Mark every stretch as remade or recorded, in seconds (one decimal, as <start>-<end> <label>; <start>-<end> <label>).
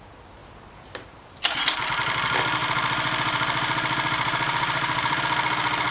0.0-0.4 recorded; 0.4-1.6 remade; 1.6-2.6 recorded; 2.6-5.2 remade; 5.2-5.9 recorded